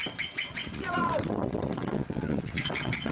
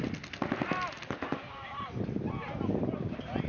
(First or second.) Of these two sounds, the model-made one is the first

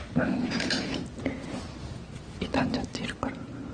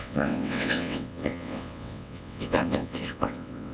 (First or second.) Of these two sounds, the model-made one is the second